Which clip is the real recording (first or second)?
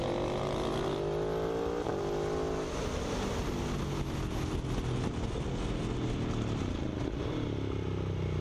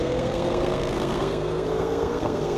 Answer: first